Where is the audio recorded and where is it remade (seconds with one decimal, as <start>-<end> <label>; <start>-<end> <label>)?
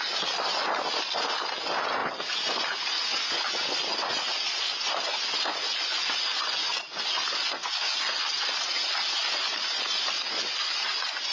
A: 0.0-11.3 recorded